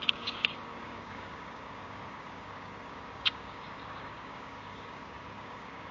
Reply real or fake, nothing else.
fake